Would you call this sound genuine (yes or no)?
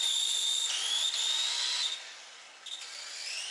yes